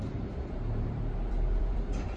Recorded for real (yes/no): no